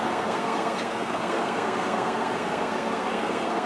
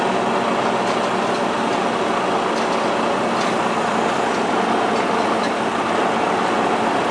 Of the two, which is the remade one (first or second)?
first